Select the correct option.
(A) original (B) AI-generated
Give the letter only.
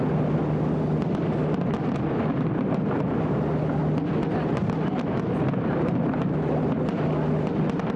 A